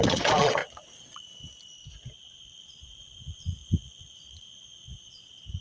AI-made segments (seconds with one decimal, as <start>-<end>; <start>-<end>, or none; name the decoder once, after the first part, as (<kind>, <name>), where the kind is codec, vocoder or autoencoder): 0.0-5.6 (vocoder, Vocos)